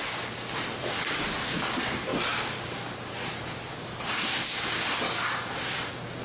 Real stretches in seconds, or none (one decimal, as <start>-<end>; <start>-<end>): 0.0-6.2